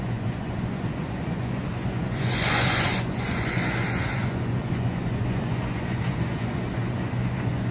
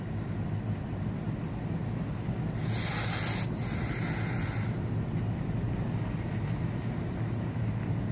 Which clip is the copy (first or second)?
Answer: first